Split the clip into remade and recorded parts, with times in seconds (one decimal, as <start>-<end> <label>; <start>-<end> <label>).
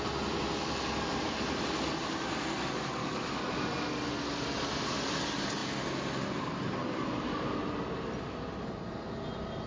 0.0-3.0 recorded; 3.0-3.6 remade; 3.6-9.7 recorded